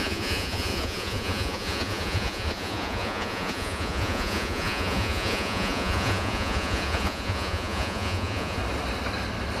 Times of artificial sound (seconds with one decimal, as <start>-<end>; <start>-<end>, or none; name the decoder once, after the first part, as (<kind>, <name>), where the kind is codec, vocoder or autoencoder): 0.0-8.6 (vocoder, Vocos)